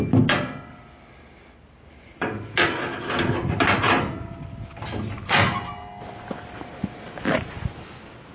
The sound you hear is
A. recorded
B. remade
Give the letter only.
A